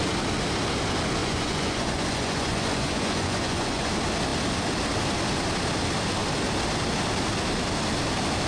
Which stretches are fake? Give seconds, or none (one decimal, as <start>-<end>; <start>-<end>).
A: 1.2-3.9